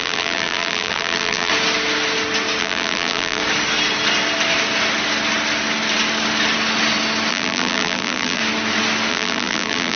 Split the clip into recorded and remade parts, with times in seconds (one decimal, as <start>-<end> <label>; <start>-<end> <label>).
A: 0.0-1.5 remade; 1.5-2.6 recorded; 2.6-3.4 remade; 3.4-7.3 recorded; 7.3-8.4 remade; 8.4-9.1 recorded; 9.1-10.0 remade

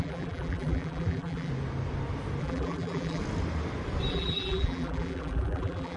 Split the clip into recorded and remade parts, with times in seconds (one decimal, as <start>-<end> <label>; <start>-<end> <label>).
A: 0.0-1.5 remade; 1.5-2.4 recorded; 2.4-3.2 remade; 3.2-4.1 recorded; 4.1-6.0 remade

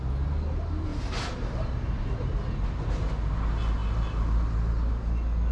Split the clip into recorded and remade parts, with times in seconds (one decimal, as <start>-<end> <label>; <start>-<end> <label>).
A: 0.0-0.9 recorded; 0.9-3.1 remade; 3.1-5.5 recorded